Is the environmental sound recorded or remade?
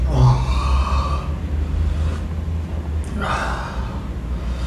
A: recorded